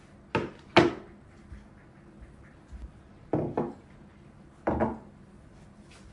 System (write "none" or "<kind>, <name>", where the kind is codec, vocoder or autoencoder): none